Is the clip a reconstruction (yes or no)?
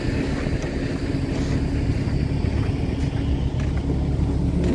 no